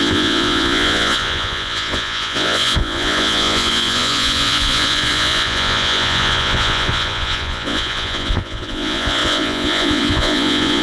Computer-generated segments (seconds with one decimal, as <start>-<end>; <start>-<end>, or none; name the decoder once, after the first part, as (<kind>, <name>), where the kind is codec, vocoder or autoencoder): 0.0-10.8 (vocoder, Vocos)